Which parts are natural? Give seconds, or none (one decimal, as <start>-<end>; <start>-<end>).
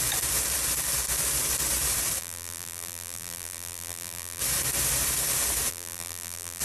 0.0-2.2; 4.4-5.7